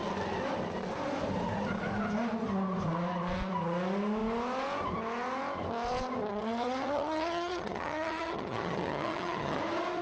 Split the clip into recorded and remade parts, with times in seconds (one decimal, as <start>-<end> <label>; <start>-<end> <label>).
0.0-6.3 recorded; 6.3-9.6 remade; 9.6-10.0 recorded